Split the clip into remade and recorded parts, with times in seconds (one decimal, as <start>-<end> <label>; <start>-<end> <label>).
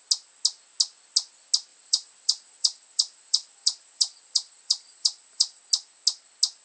0.0-1.7 recorded; 1.7-5.7 remade; 5.7-6.6 recorded